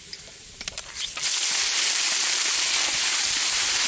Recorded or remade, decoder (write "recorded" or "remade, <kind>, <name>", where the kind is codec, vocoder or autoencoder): recorded